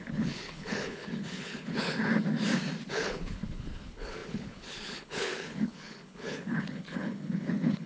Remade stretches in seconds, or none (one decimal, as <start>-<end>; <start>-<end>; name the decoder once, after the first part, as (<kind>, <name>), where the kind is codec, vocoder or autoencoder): 0.0-2.1 (codec, HILCodec); 2.9-7.9